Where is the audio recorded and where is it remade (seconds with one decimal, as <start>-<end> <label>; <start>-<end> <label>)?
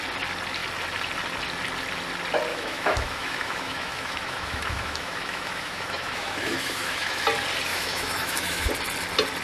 0.0-2.5 recorded; 2.5-7.2 remade; 7.2-7.7 recorded; 7.7-8.7 remade; 8.7-9.4 recorded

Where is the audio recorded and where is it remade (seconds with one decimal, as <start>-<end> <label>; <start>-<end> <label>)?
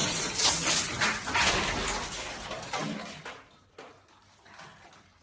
0.0-5.2 recorded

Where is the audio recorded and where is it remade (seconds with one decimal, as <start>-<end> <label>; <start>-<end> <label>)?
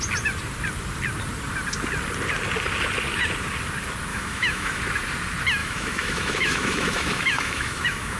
0.0-4.1 recorded; 4.1-4.8 remade; 4.8-5.6 recorded; 5.6-8.2 remade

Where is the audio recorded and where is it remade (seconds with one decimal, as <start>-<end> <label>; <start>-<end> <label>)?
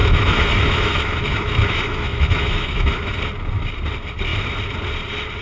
0.0-3.2 remade; 3.2-5.4 recorded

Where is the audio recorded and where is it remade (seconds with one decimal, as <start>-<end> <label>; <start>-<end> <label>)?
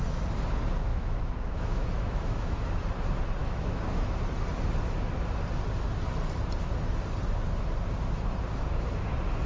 0.0-0.9 recorded; 0.9-2.7 remade; 2.7-3.4 recorded; 3.4-4.0 remade; 4.0-9.5 recorded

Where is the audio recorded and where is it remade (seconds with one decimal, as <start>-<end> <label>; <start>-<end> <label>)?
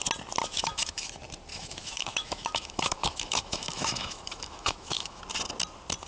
0.0-0.4 recorded; 0.4-1.1 remade; 1.1-1.5 recorded; 1.5-5.2 remade; 5.2-6.1 recorded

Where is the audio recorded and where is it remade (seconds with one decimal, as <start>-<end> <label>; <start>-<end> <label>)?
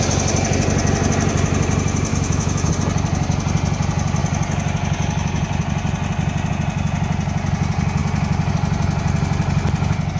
0.0-2.1 recorded; 2.1-2.7 remade; 2.7-10.2 recorded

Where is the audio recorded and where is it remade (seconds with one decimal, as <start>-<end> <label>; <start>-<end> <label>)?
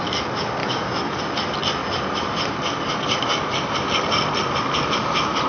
0.0-0.6 recorded; 0.6-1.2 remade; 1.2-5.5 recorded